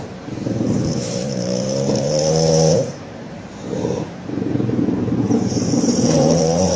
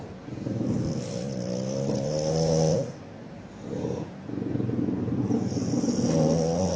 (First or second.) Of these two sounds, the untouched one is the second